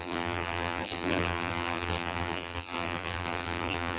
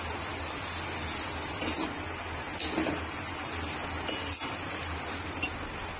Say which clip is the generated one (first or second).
first